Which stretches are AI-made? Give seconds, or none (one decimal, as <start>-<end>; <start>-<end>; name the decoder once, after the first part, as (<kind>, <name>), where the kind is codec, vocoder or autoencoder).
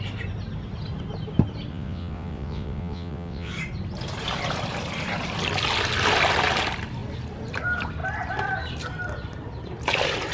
1.7-3.5 (vocoder, WaveNeXt)